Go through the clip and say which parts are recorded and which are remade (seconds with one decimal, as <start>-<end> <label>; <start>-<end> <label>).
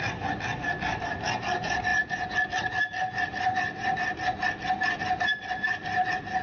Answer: 0.0-6.4 recorded